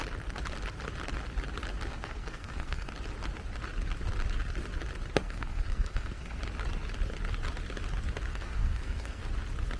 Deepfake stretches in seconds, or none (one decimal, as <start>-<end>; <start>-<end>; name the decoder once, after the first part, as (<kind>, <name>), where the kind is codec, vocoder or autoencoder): 1.9-2.9 (codec, SNAC); 5.2-6.4; 8.3-9.2